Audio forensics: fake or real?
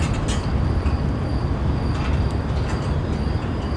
real